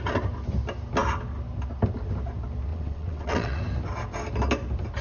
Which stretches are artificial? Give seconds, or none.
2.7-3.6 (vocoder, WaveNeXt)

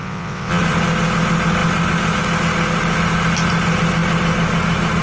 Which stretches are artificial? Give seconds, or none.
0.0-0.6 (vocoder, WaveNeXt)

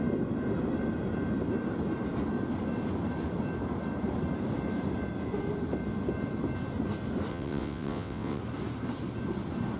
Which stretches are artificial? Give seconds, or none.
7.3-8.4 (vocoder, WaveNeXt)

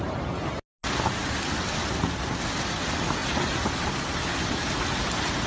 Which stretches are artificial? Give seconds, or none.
none